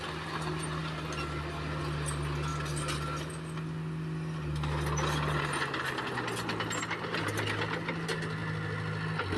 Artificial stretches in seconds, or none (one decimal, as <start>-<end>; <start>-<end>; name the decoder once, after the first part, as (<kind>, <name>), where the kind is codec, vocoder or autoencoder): none